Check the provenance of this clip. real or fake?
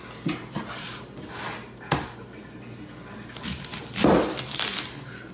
real